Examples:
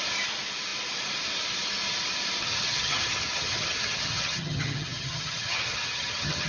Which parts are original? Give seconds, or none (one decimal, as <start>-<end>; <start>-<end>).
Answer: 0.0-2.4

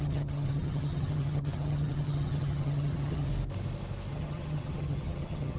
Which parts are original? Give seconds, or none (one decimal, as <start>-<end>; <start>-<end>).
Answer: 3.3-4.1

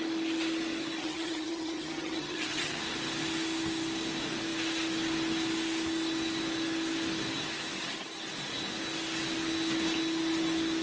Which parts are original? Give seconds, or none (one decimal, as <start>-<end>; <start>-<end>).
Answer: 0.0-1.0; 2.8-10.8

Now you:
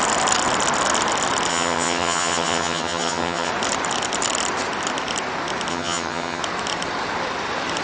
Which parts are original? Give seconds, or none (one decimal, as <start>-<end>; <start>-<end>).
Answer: 0.0-1.5; 3.5-5.7; 6.4-7.8